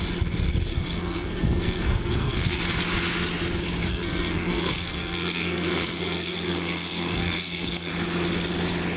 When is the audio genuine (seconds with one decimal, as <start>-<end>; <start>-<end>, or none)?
0.0-0.7; 2.6-3.9; 7.9-9.0